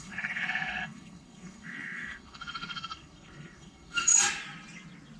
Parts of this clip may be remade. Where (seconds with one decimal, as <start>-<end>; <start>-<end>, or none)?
0.0-4.1

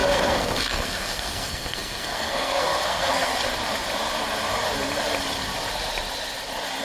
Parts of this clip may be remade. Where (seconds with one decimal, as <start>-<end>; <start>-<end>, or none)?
0.0-3.3

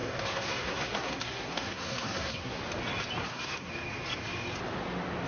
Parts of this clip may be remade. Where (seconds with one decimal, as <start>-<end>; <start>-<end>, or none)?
0.0-2.6; 3.2-3.7